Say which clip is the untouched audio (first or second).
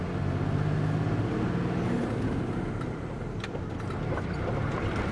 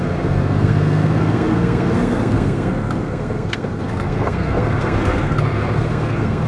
first